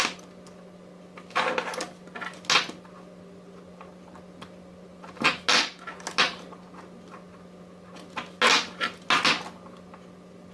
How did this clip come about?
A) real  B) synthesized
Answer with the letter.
A